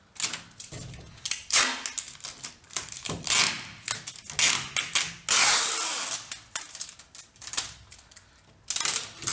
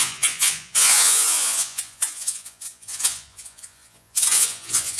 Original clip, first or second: first